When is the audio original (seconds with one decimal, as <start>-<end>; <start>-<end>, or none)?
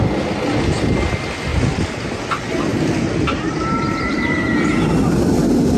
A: 0.0-1.5; 2.3-5.8